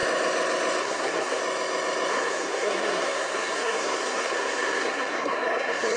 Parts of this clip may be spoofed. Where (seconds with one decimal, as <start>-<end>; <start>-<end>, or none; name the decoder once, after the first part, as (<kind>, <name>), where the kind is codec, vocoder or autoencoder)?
0.8-1.4 (codec, SNAC); 2.1-6.0